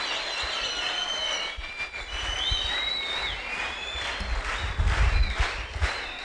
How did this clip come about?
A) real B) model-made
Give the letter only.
A